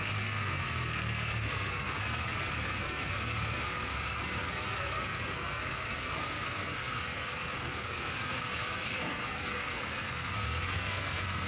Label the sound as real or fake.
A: fake